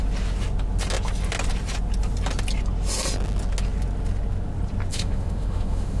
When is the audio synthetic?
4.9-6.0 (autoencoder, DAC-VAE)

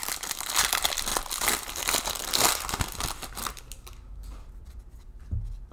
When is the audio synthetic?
none

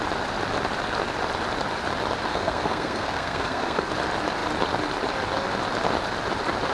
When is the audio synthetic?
2.3-3.9 (codec, SNAC)

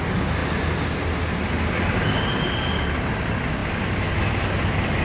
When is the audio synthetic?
none

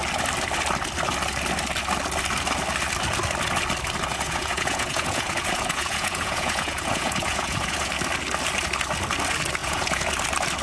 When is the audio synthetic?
4.1-7.9 (vocoder, Vocos); 9.6-10.1

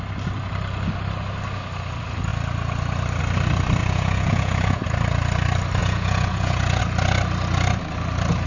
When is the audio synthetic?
3.8-4.8 (vocoder, Vocos); 5.8-6.8